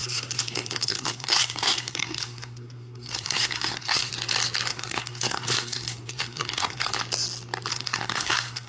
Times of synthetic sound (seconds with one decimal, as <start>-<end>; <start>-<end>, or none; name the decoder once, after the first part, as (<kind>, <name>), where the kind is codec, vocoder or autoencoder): 0.0-4.1 (codec, SNAC); 4.7-6.9; 7.7-8.7